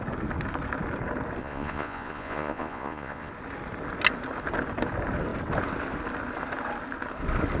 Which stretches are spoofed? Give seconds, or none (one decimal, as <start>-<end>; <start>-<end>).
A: 1.4-3.3